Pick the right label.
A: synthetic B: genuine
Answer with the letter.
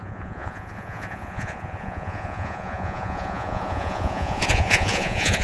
A